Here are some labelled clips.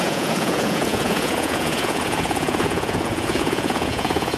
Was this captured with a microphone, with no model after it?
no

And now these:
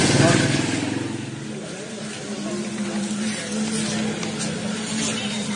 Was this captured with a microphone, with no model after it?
yes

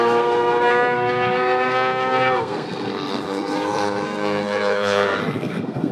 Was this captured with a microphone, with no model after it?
no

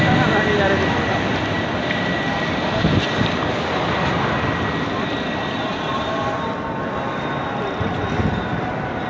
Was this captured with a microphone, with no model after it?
yes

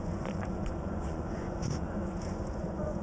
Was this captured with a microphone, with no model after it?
no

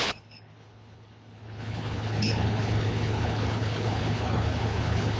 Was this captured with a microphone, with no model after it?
no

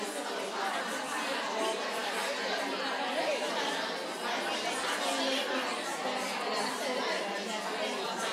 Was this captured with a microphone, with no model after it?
yes